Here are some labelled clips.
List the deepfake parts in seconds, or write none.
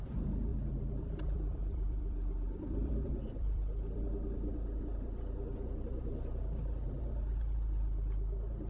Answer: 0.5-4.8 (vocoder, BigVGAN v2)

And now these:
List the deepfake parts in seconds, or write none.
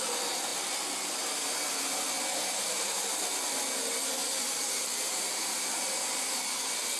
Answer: 2.3-2.8 (vocoder, BigVGAN v2); 4.2-6.4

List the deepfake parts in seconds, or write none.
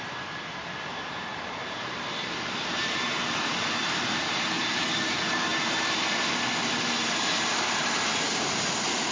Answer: 0.0-9.1 (vocoder, BigVGAN v2)